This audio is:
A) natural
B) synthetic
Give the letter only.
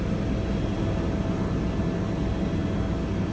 A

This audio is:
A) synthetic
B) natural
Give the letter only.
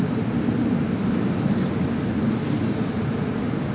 B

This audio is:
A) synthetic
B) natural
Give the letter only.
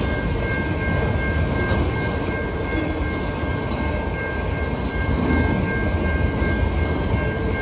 B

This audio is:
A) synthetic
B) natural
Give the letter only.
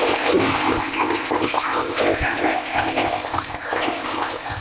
A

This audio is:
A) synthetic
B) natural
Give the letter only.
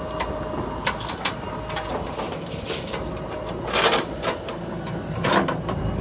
B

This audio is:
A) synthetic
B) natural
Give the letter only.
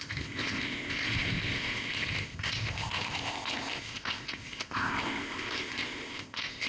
A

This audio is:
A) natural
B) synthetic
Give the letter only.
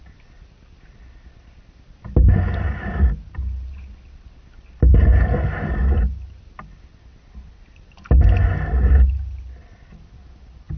A